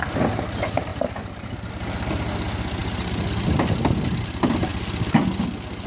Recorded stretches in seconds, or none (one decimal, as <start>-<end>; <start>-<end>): 0.0-0.9; 1.7-5.9